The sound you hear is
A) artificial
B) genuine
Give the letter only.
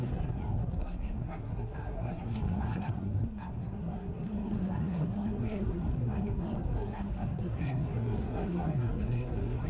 A